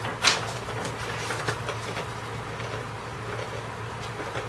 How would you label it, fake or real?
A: real